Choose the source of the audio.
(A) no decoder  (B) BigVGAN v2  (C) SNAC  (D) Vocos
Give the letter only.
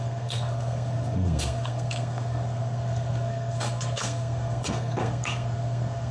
C